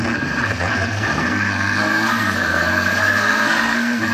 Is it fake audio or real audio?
fake